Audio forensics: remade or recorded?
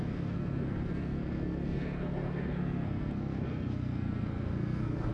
remade